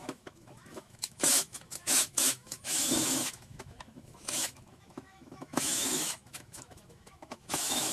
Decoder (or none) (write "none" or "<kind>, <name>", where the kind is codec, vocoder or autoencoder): autoencoder, DAC-VAE